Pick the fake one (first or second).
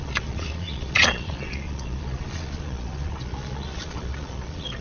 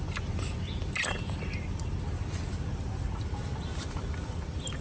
first